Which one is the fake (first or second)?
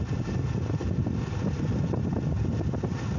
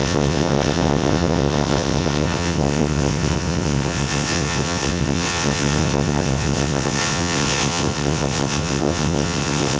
second